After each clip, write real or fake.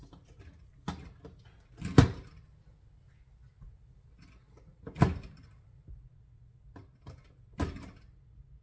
real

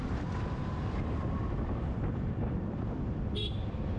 fake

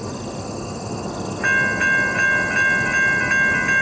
real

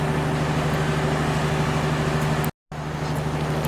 real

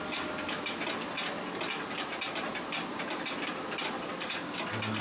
real